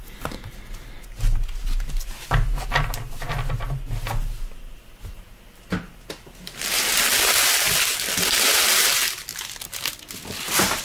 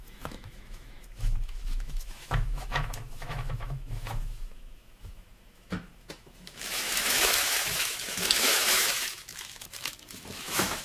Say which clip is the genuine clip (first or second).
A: first